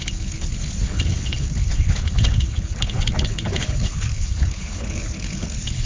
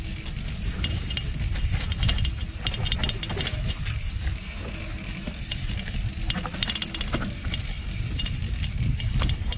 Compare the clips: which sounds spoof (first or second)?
first